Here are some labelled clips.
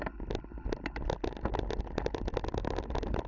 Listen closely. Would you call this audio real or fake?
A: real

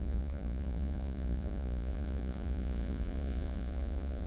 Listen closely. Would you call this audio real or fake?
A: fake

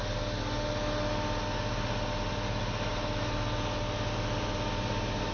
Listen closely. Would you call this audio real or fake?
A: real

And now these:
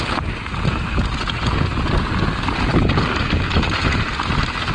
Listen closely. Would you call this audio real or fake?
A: real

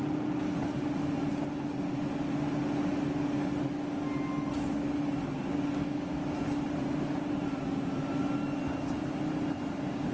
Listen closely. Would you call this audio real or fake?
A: real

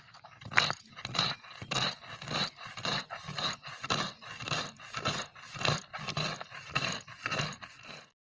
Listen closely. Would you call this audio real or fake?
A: real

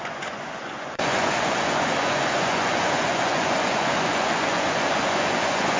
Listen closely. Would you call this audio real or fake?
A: fake